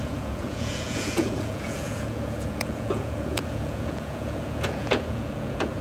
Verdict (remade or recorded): remade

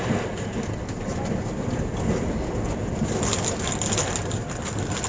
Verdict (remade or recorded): recorded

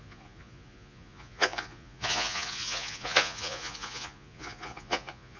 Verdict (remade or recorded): remade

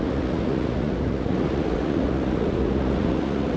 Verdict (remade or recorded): remade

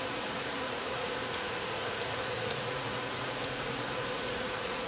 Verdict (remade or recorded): remade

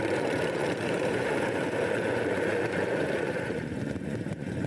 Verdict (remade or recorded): remade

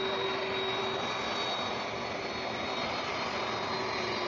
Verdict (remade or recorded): recorded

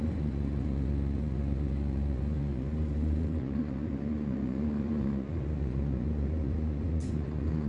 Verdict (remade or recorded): remade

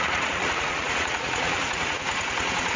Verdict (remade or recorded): remade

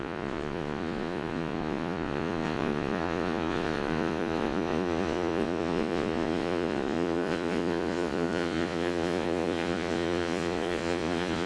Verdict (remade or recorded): remade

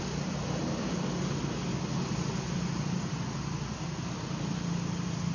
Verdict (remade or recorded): recorded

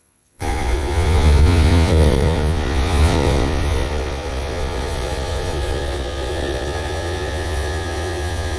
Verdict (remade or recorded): remade